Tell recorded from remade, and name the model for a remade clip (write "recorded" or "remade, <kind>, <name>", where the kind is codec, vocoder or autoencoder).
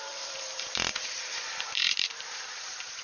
remade, vocoder, BigVGAN v2